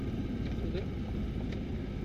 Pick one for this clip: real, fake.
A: real